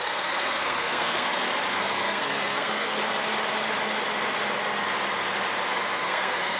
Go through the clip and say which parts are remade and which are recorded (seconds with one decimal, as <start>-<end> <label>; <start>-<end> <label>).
0.0-1.3 remade; 1.3-1.8 recorded; 1.8-3.0 remade; 3.0-5.7 recorded; 5.7-6.6 remade